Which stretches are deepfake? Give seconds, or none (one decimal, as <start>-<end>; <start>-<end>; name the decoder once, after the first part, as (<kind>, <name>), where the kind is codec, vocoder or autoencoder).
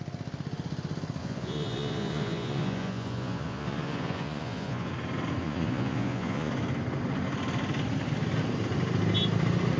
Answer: 1.2-4.9 (vocoder, Vocos); 5.4-6.5